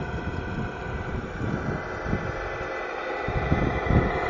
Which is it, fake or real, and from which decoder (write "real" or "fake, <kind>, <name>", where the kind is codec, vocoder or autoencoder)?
real